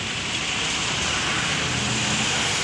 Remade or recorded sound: recorded